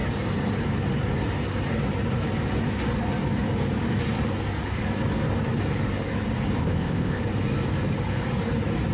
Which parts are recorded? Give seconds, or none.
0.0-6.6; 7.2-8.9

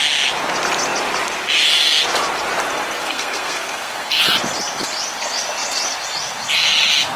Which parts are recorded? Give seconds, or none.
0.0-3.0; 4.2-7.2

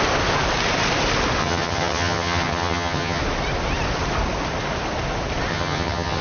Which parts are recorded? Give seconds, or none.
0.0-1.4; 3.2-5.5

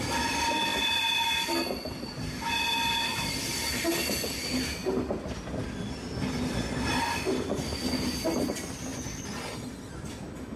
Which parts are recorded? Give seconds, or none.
0.0-3.1; 3.9-10.6

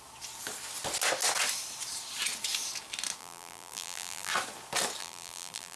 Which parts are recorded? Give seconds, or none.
0.0-3.2; 4.3-5.0

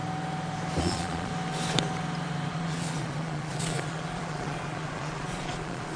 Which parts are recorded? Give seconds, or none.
0.0-0.8; 1.3-2.5

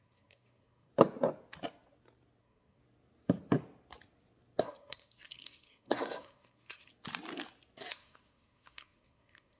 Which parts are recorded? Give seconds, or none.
0.9-2.4; 2.8-4.6; 6.9-7.9

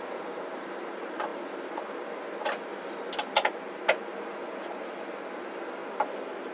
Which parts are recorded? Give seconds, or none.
0.0-6.5